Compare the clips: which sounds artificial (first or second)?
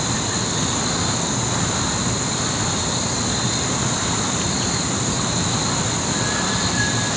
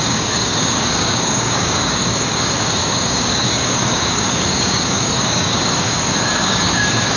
second